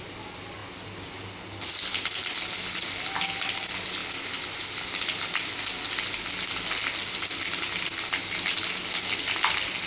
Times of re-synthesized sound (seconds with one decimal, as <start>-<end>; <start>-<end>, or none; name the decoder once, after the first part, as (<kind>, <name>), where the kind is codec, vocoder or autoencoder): none

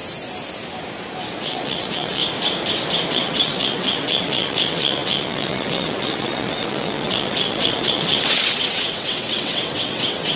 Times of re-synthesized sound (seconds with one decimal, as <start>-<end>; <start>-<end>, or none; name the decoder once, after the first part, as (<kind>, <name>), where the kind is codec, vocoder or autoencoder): 1.4-2.2 (vocoder, WaveNeXt); 3.1-10.4

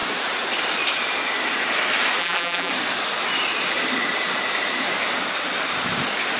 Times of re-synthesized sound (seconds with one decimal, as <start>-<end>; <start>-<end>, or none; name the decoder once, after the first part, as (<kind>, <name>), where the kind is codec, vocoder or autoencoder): 2.2-2.7 (vocoder, BigVGAN v2)

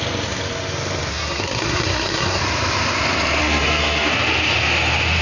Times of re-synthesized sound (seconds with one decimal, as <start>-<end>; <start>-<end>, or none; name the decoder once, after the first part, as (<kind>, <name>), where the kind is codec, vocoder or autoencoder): 1.1-2.4 (codec, SNAC); 3.4-4.2